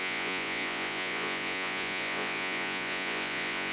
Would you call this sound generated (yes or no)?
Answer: yes